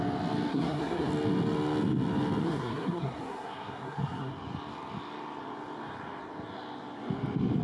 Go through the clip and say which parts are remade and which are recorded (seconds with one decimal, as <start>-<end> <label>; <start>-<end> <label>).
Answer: 0.0-0.5 recorded; 0.5-1.1 remade; 1.1-2.4 recorded; 2.4-4.3 remade; 4.3-7.6 recorded